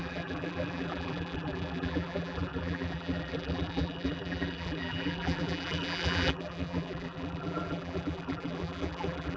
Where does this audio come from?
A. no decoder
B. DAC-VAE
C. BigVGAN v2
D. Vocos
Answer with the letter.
C